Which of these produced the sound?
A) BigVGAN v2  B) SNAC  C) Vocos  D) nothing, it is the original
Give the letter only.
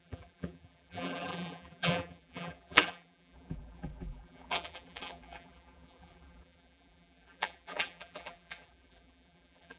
A